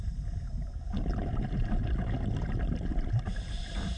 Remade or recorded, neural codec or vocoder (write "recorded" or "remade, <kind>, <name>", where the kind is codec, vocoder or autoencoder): recorded